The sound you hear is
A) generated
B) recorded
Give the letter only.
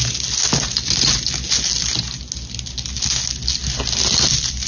B